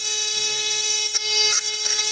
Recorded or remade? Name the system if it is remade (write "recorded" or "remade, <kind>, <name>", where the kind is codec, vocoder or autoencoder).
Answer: remade, codec, SNAC